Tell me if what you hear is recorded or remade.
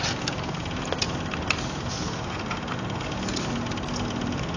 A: recorded